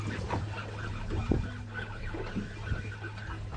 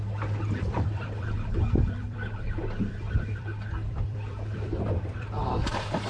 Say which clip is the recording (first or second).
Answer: first